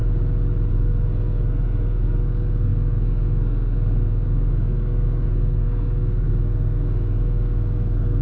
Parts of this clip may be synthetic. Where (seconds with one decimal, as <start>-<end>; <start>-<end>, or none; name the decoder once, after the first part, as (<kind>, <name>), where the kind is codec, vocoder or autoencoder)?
0.7-8.2 (codec, SNAC)